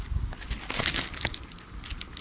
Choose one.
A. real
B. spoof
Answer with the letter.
A